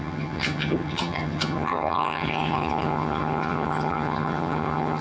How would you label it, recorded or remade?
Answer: remade